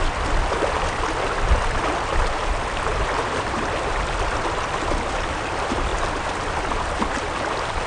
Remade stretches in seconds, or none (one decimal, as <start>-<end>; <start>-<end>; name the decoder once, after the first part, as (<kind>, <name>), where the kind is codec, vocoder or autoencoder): none